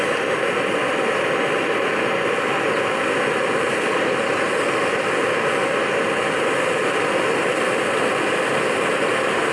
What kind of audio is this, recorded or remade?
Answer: recorded